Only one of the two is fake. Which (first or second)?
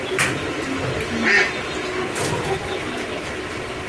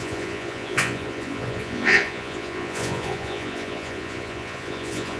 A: second